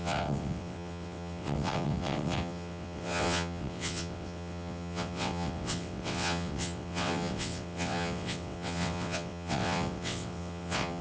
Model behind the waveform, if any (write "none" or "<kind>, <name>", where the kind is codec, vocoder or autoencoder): vocoder, WaveNeXt